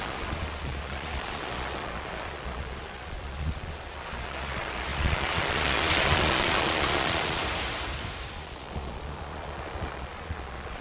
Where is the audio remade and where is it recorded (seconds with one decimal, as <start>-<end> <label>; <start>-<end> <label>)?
0.0-7.4 remade; 7.4-8.3 recorded; 8.3-10.8 remade